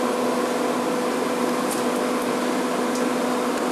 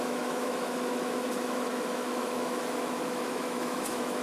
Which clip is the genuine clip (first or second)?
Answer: first